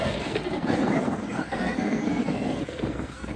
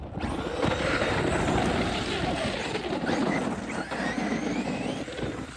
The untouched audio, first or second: second